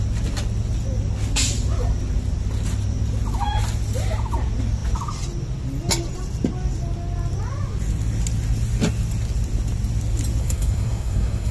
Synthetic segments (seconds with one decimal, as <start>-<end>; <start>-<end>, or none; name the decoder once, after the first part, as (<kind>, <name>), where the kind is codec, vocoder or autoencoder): 10.4-11.5 (codec, SNAC)